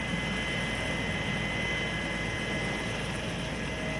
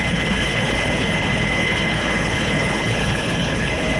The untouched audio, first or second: first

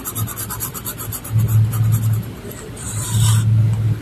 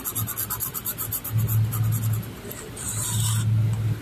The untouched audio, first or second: second